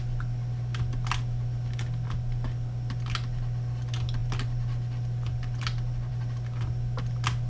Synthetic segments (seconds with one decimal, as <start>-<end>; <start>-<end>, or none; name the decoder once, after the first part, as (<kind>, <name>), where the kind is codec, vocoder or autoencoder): none